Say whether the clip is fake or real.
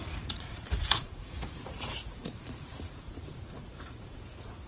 fake